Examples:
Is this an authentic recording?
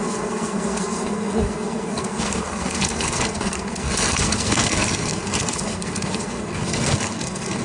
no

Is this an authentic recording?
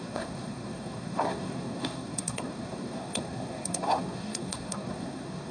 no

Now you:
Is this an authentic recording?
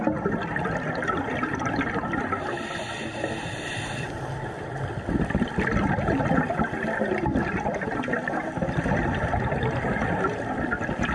yes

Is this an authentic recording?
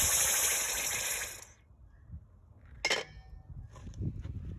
yes